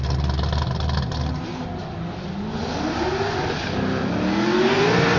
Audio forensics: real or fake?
real